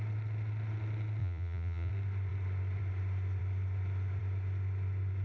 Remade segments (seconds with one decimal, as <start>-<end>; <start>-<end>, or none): 1.2-1.9